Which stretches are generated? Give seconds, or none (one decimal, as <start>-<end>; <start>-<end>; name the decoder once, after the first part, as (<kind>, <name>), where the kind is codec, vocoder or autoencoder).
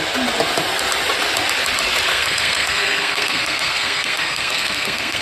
2.1-5.2 (codec, SNAC)